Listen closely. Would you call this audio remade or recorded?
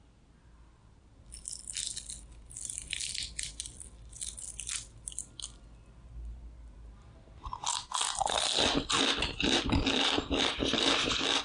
recorded